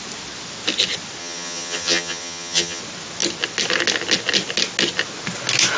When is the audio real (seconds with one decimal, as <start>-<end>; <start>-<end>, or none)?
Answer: 0.0-1.2; 2.8-5.8